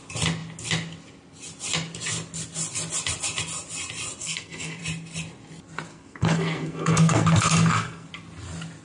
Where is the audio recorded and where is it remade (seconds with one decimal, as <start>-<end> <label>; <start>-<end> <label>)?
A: 0.0-4.2 recorded; 4.2-4.8 remade; 4.8-5.9 recorded; 5.9-8.1 remade; 8.1-8.8 recorded

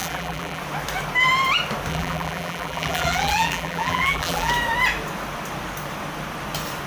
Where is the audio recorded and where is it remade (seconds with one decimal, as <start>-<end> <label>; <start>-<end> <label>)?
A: 0.0-0.6 remade; 0.6-1.9 recorded; 1.9-4.5 remade; 4.5-6.9 recorded

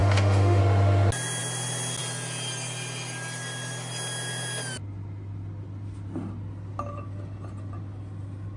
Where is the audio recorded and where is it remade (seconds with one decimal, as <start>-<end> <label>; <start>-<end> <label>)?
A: 0.0-0.6 remade; 0.6-8.6 recorded

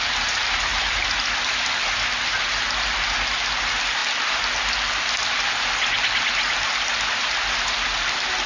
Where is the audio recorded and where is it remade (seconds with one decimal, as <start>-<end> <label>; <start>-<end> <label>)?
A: 0.0-8.5 recorded

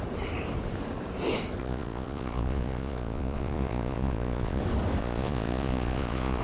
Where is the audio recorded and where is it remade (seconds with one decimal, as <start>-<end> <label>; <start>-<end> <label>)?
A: 0.0-1.6 recorded; 1.6-4.6 remade; 4.6-5.0 recorded; 5.0-6.4 remade

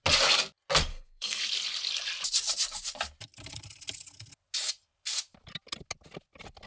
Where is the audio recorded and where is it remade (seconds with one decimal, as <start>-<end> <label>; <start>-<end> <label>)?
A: 0.0-0.9 recorded; 0.9-1.4 remade; 1.4-6.7 recorded

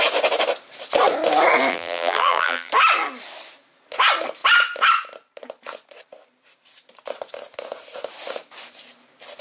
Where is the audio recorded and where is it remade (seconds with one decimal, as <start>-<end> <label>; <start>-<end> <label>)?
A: 0.0-1.7 recorded; 1.7-2.7 remade; 2.7-9.4 recorded

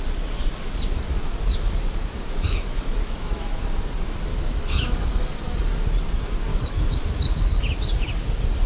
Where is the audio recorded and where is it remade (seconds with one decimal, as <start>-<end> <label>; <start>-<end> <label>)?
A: 0.0-2.0 recorded; 2.0-3.6 remade; 3.6-4.3 recorded; 4.3-5.6 remade; 5.6-6.5 recorded; 6.5-7.6 remade; 7.6-8.7 recorded